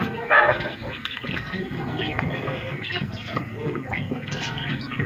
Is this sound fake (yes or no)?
yes